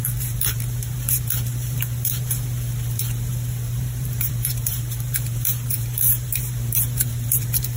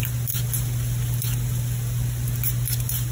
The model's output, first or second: first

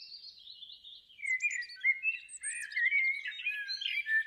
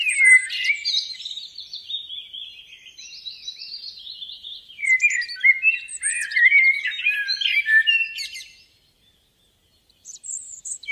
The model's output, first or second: second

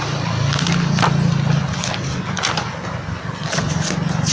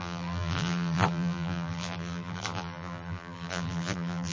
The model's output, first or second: second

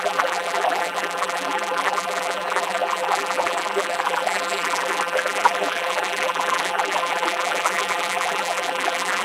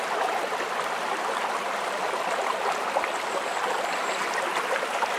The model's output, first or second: first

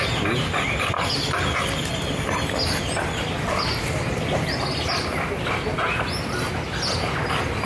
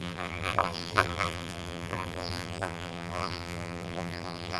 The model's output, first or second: second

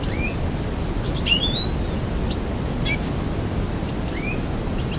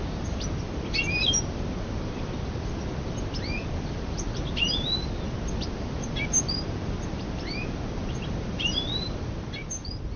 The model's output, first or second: second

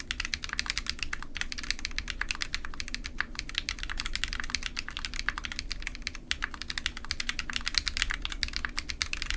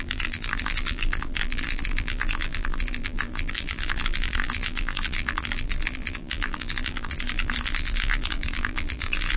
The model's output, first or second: second